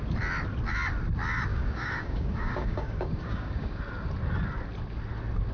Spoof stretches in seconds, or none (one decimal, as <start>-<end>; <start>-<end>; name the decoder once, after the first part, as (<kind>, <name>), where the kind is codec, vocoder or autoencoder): 1.5-3.8 (codec, DAC)